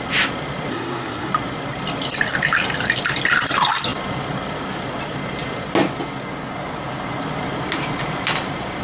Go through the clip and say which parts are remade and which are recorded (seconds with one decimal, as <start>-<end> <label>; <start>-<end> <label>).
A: 0.0-0.7 recorded; 0.7-1.3 remade; 1.3-8.8 recorded